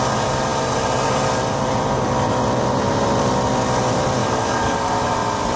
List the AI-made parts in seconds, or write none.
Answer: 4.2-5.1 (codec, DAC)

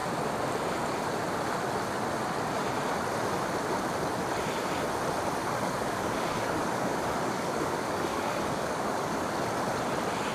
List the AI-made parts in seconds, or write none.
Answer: 5.4-9.3 (codec, DAC)

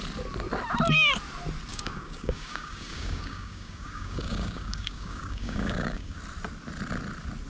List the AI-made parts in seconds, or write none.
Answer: 1.7-6.2 (codec, DAC)

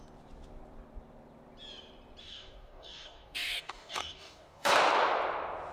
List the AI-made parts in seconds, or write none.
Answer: 2.2-4.7 (codec, DAC)